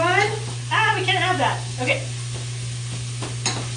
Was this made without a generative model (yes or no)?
yes